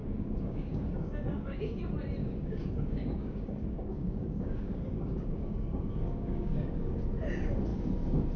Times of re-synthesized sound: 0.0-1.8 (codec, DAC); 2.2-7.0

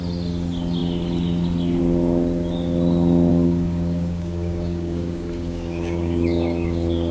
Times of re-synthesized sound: 3.3-7.1 (codec, DAC)

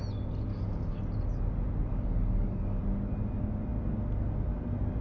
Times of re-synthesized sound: 0.5-1.0 (codec, DAC); 1.9-2.8